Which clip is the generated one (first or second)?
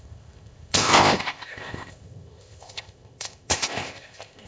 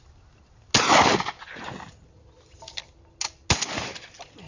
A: first